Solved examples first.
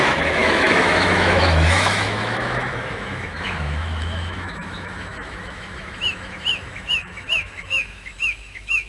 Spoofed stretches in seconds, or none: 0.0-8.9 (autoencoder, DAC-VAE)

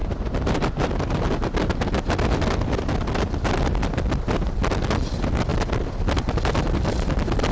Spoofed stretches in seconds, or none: none

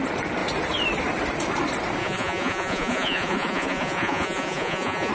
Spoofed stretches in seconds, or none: 2.0-5.1 (vocoder, Vocos)

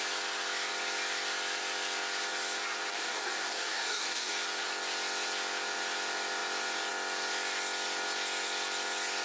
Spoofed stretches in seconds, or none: 2.9-4.3 (codec, DAC)

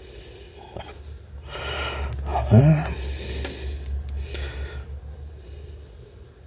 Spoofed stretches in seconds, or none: none